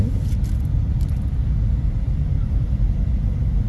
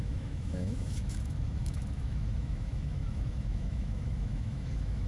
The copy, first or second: second